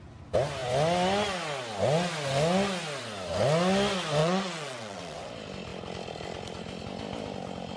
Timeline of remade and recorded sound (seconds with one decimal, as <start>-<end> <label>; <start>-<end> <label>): 0.0-4.2 recorded; 4.2-5.3 remade; 5.3-7.8 recorded